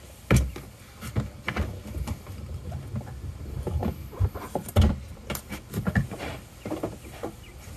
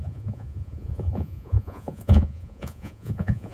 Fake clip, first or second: second